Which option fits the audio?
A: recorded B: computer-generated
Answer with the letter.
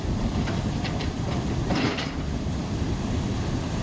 B